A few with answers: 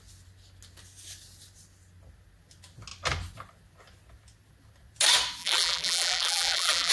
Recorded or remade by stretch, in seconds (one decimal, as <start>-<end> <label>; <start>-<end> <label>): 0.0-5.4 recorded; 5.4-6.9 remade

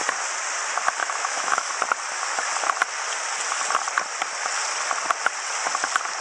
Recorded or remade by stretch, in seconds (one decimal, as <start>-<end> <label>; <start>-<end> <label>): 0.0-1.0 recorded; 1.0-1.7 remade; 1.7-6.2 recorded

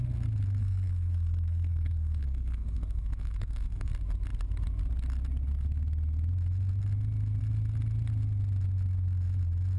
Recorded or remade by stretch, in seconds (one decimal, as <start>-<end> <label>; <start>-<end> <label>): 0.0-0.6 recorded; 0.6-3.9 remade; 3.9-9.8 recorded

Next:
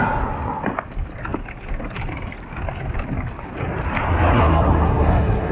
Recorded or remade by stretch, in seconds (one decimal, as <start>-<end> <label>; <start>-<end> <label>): 0.0-4.3 recorded; 4.3-5.5 remade

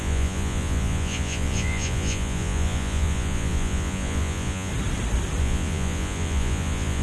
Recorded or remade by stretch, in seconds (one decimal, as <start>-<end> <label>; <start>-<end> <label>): 0.0-4.7 remade; 4.7-5.4 recorded; 5.4-7.0 remade

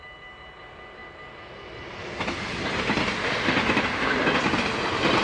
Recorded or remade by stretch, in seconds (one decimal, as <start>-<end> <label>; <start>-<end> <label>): 0.0-5.2 recorded

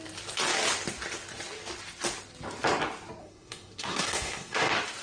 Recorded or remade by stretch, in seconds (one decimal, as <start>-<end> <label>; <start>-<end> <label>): 0.0-3.2 recorded; 3.2-4.6 remade; 4.6-5.0 recorded

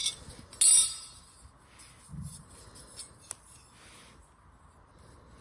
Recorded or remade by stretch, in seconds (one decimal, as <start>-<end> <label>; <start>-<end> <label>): 0.0-5.4 recorded